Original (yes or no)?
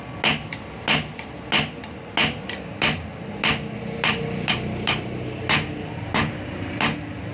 yes